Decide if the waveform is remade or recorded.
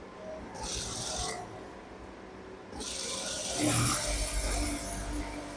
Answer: recorded